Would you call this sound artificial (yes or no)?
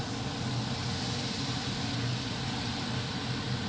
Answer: no